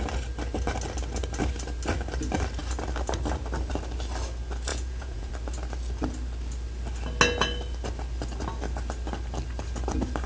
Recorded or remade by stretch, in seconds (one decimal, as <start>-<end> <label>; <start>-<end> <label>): 0.0-4.7 recorded; 4.7-5.3 remade; 5.3-10.3 recorded